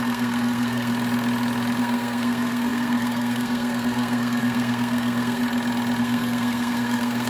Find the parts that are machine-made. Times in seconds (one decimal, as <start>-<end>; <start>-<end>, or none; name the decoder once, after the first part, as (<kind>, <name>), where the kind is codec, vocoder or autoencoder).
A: 0.0-0.9 (codec, SNAC); 1.8-5.4; 6.0-7.3